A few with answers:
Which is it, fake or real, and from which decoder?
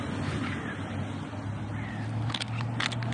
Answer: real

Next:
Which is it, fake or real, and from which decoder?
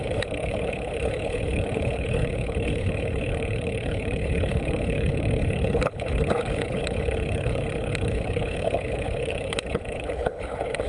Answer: fake, codec, HILCodec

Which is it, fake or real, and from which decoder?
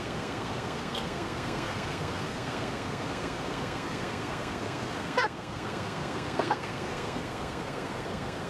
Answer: fake, codec, SNAC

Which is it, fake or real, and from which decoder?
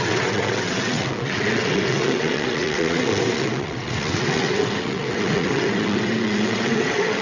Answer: fake, vocoder, WaveNeXt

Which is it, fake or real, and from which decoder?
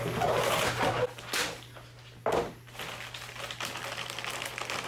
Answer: real